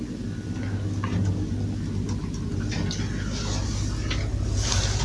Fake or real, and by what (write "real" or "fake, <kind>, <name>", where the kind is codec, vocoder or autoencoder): real